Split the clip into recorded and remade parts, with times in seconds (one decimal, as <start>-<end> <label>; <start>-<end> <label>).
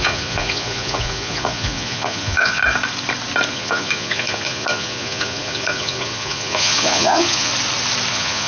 0.0-2.6 remade; 2.6-3.5 recorded; 3.5-7.5 remade; 7.5-8.1 recorded; 8.1-8.5 remade